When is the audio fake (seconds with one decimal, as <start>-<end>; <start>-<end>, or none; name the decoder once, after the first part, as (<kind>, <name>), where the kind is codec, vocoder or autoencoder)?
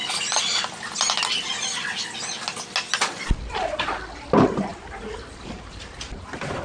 none